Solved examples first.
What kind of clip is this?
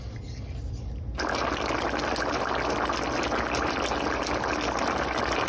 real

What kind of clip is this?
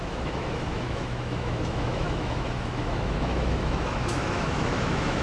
fake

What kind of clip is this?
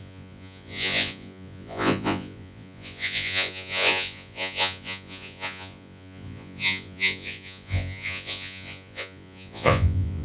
fake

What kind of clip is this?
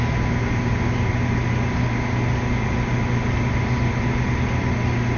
real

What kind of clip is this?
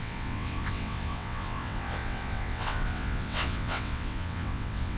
fake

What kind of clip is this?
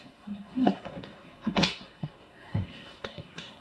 fake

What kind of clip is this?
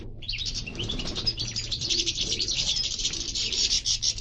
fake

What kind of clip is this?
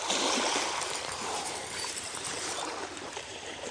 fake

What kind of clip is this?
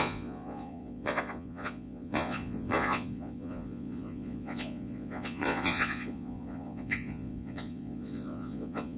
fake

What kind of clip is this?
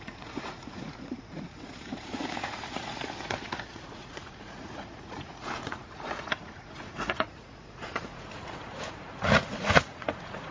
fake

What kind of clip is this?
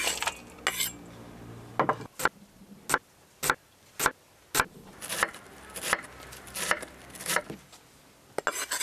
real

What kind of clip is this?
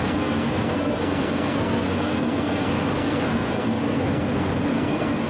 fake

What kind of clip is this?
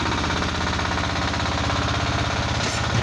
real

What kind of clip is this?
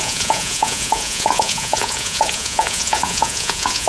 fake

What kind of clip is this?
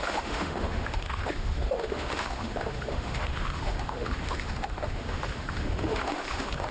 fake